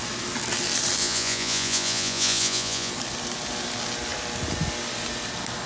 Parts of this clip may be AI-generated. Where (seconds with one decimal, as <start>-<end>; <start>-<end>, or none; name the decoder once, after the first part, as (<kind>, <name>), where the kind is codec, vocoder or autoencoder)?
1.0-2.9 (vocoder, Vocos)